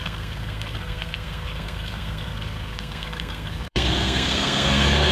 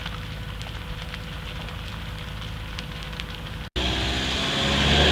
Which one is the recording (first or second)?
second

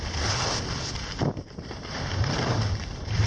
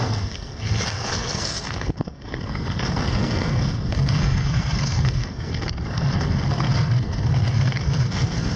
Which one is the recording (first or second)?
first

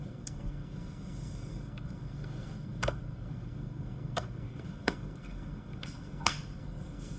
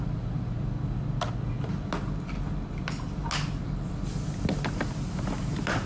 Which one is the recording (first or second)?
second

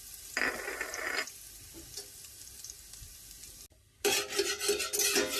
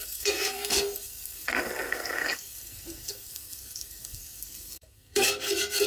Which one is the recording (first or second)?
first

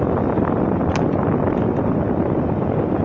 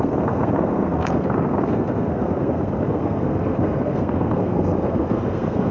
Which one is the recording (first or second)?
first